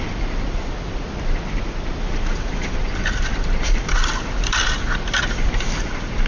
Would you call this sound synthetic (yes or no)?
yes